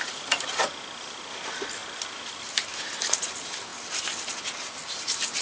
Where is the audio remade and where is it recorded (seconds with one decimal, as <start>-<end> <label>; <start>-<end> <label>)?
0.0-5.4 recorded